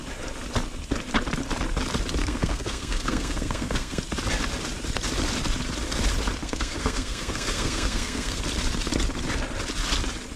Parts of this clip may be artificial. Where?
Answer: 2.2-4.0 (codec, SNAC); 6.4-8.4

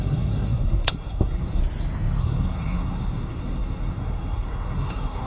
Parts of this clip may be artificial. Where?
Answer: 0.0-1.6 (codec, SNAC); 2.2-5.3

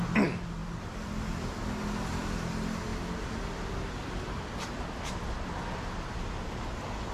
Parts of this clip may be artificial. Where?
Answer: none

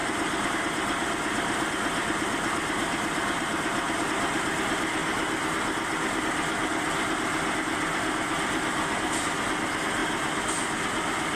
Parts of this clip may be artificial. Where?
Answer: none

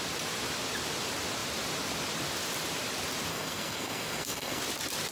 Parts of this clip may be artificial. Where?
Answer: 3.3-4.6 (codec, SNAC)

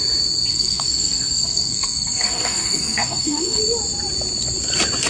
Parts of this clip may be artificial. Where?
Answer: 0.5-3.6 (codec, SNAC)